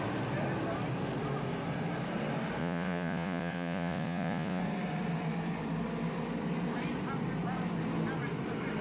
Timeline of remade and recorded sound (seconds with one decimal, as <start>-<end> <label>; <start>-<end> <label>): 0.0-2.6 recorded; 2.6-4.6 remade; 4.6-8.8 recorded